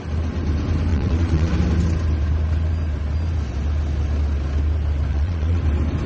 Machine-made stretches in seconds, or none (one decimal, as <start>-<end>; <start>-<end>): 0.9-1.5; 5.1-5.6